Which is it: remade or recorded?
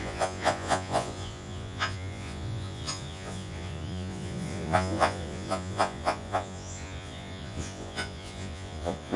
remade